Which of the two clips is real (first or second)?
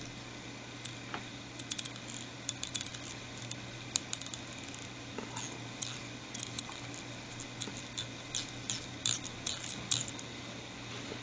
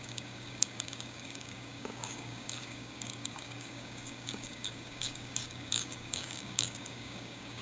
first